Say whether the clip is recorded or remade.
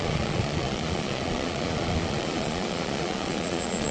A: remade